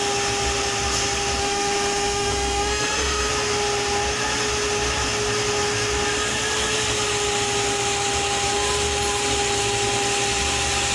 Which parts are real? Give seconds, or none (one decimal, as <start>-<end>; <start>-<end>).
0.0-1.4; 3.3-10.9

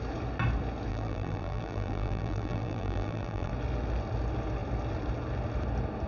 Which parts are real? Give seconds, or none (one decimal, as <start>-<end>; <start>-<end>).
0.0-0.9; 3.5-6.1